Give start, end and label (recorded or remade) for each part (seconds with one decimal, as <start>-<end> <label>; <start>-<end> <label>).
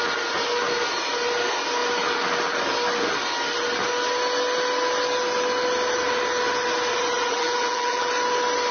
0.0-7.3 recorded; 7.3-8.1 remade; 8.1-8.7 recorded